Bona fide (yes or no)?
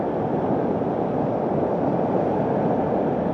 yes